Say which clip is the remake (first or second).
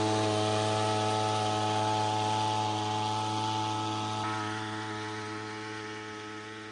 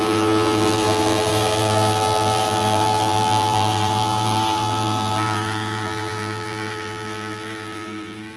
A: second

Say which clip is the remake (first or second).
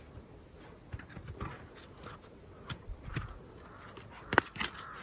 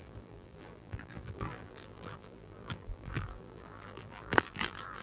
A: second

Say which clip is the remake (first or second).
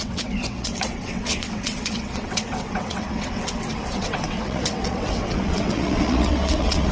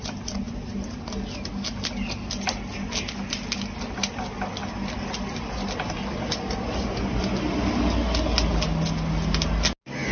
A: first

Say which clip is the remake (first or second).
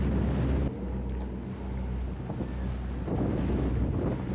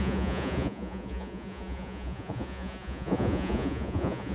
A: second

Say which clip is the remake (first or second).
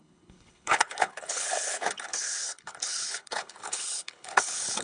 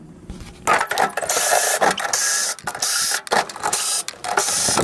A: first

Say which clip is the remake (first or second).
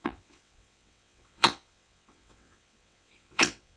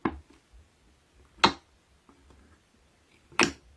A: first